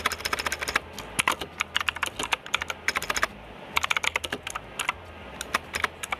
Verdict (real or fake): real